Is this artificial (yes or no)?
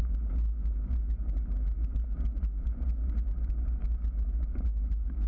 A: no